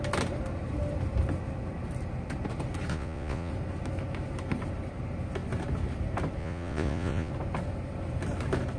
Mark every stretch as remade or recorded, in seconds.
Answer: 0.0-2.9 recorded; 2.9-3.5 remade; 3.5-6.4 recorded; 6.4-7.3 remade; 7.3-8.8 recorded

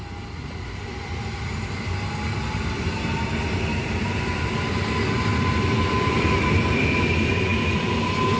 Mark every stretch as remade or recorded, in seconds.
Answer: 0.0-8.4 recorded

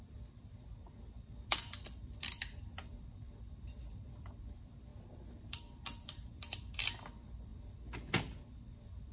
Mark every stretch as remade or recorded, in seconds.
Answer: 0.0-4.9 remade; 4.9-5.4 recorded; 5.4-7.5 remade; 7.5-8.2 recorded; 8.2-9.1 remade

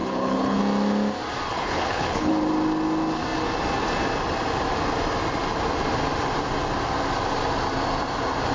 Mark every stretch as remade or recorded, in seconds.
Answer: 0.0-0.6 remade; 0.6-1.5 recorded; 1.5-2.3 remade; 2.3-8.5 recorded